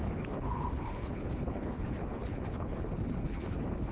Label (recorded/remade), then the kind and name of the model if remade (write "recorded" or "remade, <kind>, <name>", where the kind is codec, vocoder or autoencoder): remade, codec, HILCodec